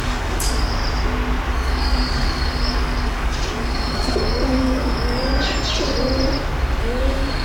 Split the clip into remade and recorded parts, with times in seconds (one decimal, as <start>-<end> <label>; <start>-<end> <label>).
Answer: 0.0-0.8 remade; 0.8-1.5 recorded; 1.5-5.3 remade; 5.3-6.8 recorded; 6.8-7.4 remade